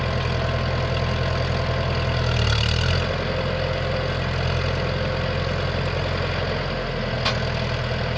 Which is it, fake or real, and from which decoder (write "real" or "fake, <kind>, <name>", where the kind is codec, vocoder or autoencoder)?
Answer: real